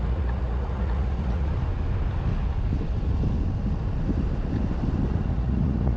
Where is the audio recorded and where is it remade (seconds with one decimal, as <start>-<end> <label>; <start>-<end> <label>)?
0.0-1.5 remade; 1.5-5.1 recorded; 5.1-6.0 remade